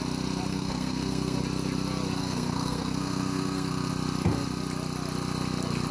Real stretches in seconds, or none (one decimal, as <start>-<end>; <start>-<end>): 0.0-0.5; 1.4-2.2; 3.9-5.9